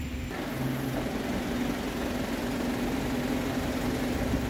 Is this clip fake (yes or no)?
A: no